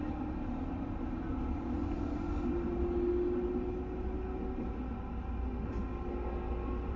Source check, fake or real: real